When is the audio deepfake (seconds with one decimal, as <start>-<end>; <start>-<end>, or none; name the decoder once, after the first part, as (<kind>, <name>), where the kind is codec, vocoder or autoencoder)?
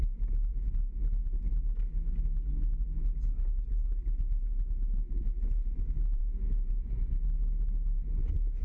none